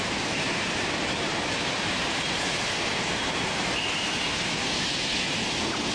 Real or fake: real